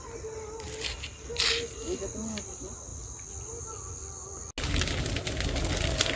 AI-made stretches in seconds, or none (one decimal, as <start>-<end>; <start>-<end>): none